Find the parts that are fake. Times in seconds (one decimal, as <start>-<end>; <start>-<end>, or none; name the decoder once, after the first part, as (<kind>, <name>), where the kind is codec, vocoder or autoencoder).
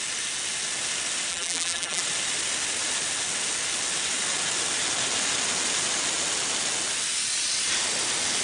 1.3-2.0 (vocoder, BigVGAN v2)